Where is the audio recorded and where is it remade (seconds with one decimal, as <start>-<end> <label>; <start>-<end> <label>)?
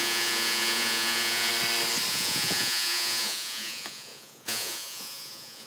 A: 0.0-1.5 remade; 1.5-2.1 recorded; 2.1-5.7 remade